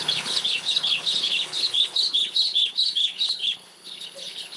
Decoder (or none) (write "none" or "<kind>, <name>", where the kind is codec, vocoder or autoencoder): codec, HILCodec